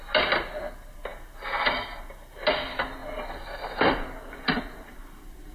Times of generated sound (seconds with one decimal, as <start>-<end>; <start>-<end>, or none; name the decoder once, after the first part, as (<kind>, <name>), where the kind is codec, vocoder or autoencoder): none